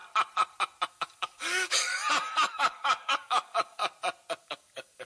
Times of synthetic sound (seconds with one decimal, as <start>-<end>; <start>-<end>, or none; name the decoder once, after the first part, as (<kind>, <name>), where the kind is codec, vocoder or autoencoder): 0.9-1.9 (codec, DAC); 2.5-3.8; 4.4-5.0